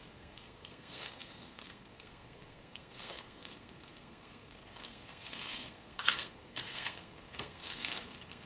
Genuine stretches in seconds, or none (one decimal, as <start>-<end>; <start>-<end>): none